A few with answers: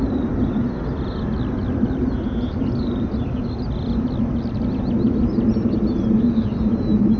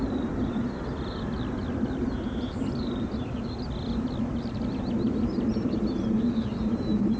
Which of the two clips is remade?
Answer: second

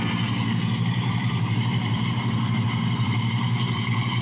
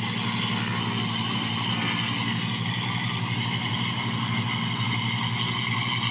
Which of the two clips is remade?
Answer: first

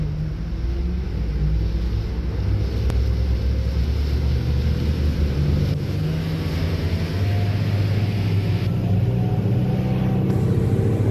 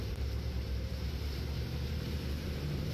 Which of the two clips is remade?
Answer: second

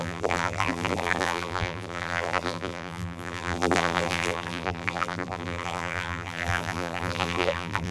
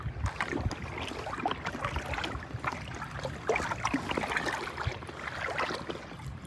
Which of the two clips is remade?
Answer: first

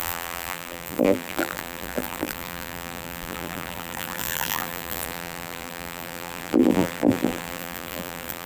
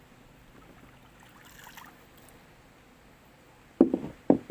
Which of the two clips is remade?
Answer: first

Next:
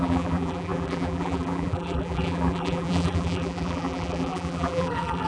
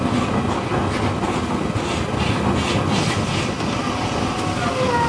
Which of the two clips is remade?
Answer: first